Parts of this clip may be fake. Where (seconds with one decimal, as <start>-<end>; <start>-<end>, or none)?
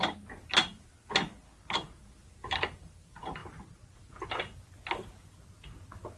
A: none